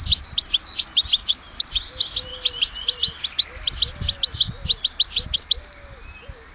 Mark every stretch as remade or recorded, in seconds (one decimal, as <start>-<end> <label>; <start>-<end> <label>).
0.0-0.9 recorded; 0.9-1.9 remade; 1.9-2.3 recorded; 2.3-3.2 remade; 3.2-6.5 recorded